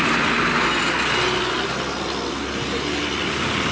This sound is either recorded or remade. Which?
recorded